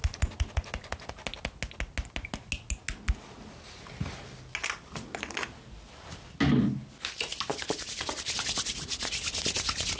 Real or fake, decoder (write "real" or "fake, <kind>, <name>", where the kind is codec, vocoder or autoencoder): real